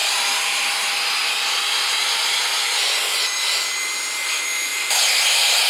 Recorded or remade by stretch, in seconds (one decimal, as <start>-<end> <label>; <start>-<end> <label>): 0.0-5.7 recorded